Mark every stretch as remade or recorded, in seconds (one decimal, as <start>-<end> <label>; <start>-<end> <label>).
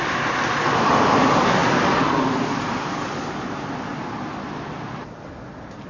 0.0-5.9 recorded